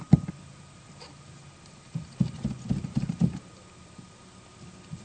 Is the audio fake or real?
real